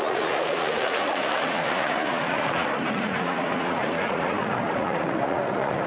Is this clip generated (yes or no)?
yes